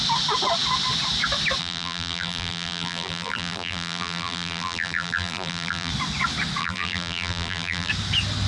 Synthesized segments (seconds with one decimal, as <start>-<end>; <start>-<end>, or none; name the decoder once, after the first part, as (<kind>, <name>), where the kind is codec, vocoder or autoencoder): 1.6-5.9 (vocoder, BigVGAN v2); 6.6-7.9

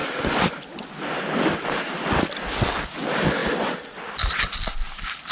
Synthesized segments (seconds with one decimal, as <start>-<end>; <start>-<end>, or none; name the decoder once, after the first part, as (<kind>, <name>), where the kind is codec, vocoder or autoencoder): none

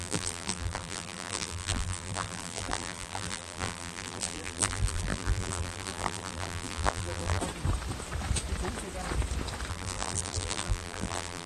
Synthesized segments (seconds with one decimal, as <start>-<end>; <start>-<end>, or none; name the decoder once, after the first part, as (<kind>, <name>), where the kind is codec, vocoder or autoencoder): 0.0-7.4 (vocoder, BigVGAN v2); 9.7-11.5